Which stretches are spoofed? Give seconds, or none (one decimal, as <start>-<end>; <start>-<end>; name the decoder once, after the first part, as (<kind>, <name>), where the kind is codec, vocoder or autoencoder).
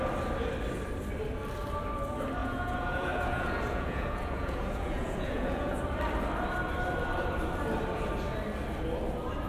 2.4-5.8 (vocoder, Vocos)